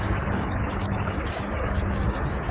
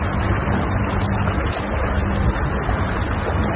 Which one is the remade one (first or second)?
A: first